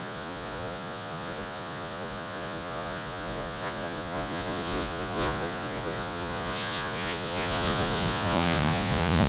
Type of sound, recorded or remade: remade